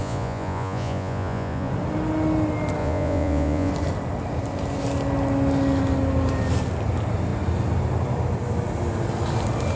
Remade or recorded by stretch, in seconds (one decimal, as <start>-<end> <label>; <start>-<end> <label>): 0.0-1.7 remade; 1.7-2.8 recorded; 2.8-3.7 remade; 3.7-9.8 recorded